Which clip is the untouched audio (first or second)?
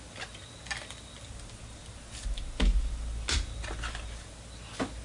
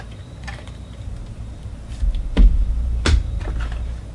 first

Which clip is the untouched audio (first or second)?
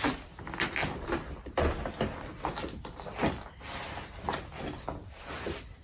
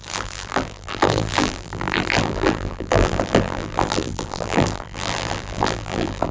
first